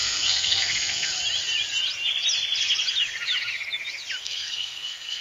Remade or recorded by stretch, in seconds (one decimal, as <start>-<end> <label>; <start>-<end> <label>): 0.0-1.1 remade; 1.1-4.2 recorded; 4.2-5.2 remade